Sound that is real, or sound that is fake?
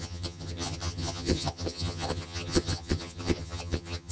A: fake